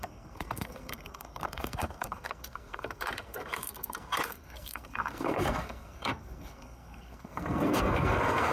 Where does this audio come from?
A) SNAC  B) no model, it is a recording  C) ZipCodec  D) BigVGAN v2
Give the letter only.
A